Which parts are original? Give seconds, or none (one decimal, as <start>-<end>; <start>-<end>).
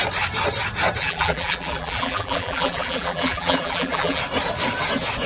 0.0-1.0; 4.2-5.3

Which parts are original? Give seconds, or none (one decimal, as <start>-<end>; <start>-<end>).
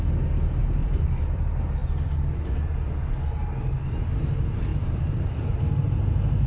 0.0-0.8; 1.4-1.8; 2.7-3.4; 4.2-4.7; 5.6-6.5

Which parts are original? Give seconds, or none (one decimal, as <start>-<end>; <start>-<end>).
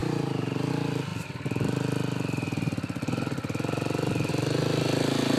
0.7-5.4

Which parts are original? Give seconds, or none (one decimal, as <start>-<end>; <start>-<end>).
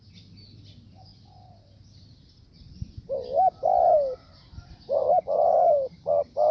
0.0-6.5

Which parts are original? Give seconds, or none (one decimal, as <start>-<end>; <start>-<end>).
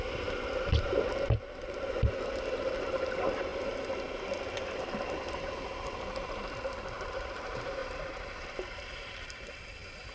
0.0-7.8; 9.2-10.1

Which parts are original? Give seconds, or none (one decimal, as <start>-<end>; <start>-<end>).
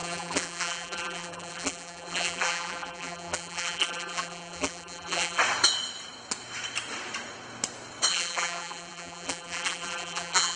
5.4-8.1